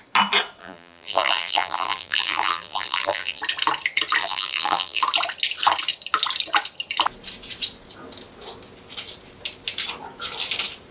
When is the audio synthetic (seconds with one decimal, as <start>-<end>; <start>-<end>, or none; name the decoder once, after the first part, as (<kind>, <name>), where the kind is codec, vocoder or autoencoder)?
0.6-3.4 (vocoder, BigVGAN v2); 4.2-5.0